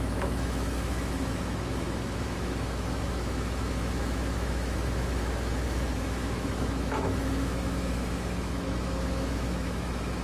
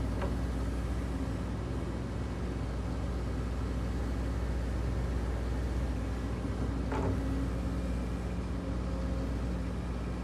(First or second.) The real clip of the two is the second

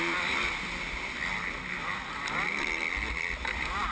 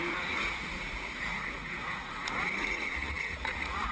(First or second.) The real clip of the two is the first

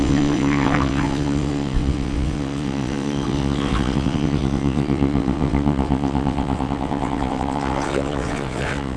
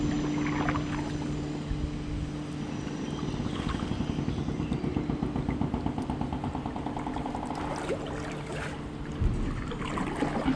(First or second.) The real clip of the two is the second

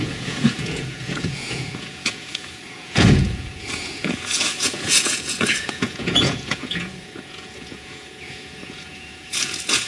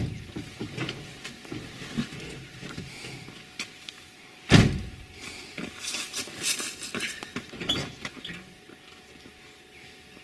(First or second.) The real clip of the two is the second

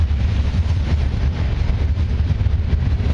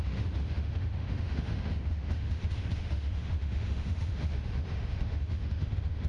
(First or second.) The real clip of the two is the first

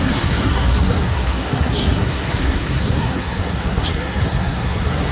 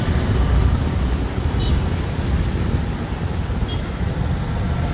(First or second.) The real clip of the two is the second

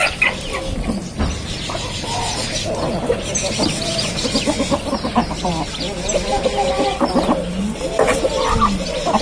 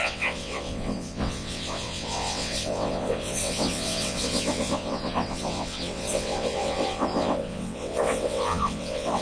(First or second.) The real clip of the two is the first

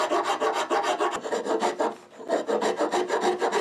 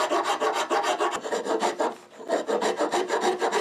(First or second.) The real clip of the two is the first